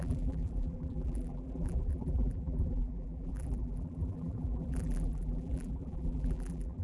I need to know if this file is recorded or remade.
remade